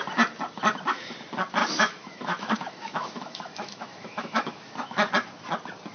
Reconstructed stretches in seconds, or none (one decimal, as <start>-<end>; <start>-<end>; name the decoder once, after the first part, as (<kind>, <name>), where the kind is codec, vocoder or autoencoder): 1.6-5.1 (autoencoder, DAC-VAE)